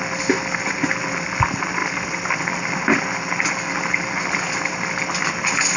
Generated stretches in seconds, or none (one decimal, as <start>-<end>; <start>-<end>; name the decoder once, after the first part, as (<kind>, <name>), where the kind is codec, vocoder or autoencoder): none